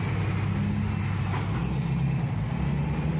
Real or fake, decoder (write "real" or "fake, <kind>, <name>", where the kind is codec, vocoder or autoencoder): real